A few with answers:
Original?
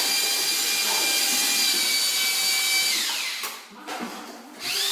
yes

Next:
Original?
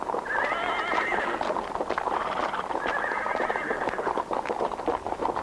yes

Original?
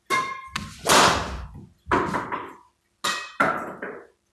yes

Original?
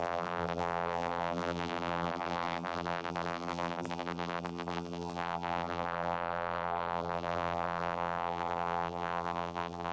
no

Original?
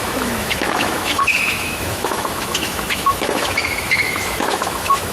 no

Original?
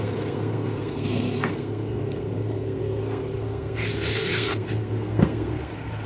no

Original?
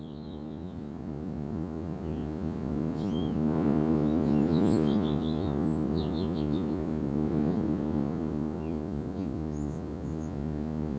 no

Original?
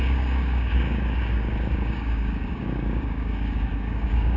no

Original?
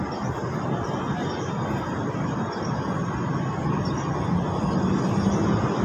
yes